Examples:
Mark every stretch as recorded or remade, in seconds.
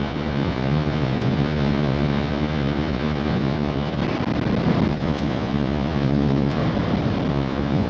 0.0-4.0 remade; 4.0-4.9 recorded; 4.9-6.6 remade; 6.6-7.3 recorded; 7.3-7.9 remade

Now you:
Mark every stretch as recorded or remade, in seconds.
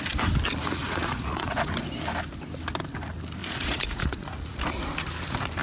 0.0-0.6 recorded; 0.6-1.7 remade; 1.7-3.4 recorded; 3.4-4.8 remade; 4.8-5.6 recorded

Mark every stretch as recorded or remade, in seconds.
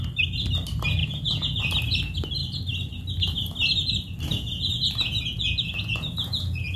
0.0-1.0 recorded; 1.0-1.6 remade; 1.6-4.3 recorded; 4.3-6.8 remade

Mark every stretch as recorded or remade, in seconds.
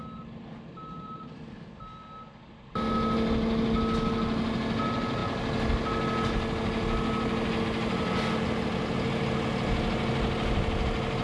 0.0-11.2 recorded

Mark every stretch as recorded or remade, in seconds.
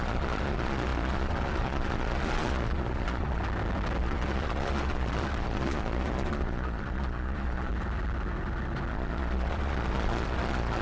0.0-3.4 remade; 3.4-4.0 recorded; 4.0-7.7 remade; 7.7-8.9 recorded; 8.9-10.8 remade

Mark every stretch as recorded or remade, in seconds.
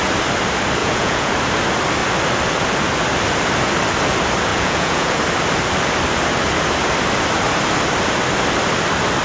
0.0-0.8 recorded; 0.8-1.3 remade; 1.3-4.5 recorded; 4.5-5.2 remade; 5.2-9.2 recorded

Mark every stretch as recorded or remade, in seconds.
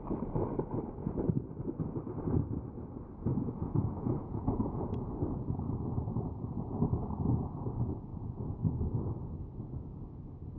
0.0-3.3 recorded; 3.3-4.9 remade; 4.9-10.6 recorded